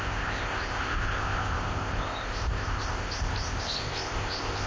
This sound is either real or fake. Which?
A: fake